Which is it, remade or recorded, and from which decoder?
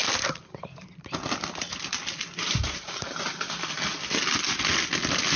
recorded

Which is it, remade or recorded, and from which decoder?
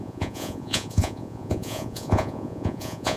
remade, vocoder, Vocos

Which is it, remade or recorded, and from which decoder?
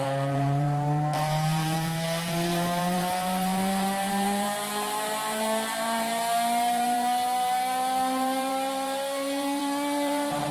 remade, vocoder, BigVGAN v2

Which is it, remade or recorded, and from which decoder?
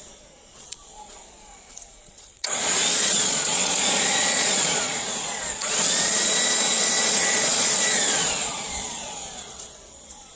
remade, vocoder, Vocos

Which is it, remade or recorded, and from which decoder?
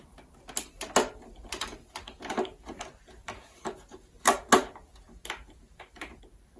recorded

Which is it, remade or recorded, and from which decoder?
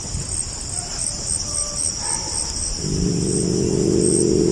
recorded